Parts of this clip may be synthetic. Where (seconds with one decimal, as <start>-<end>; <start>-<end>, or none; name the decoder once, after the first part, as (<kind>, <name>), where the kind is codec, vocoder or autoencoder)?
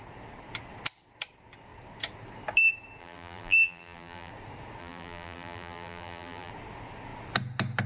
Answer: 3.0-4.3 (vocoder, BigVGAN v2); 4.8-6.5